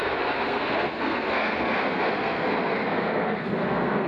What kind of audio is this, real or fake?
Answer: fake